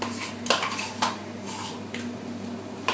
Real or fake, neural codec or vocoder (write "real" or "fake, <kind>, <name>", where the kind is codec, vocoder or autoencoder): real